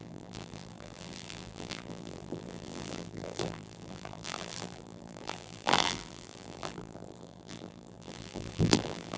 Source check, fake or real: fake